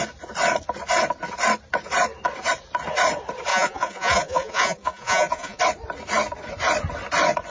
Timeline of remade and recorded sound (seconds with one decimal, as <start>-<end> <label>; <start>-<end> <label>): 0.0-3.5 recorded; 3.5-5.6 remade; 5.6-7.5 recorded